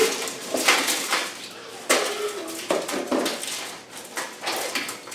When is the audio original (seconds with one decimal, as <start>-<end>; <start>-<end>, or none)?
1.9-5.1